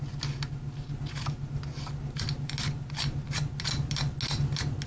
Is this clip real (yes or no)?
yes